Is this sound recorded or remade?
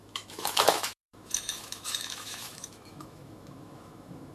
remade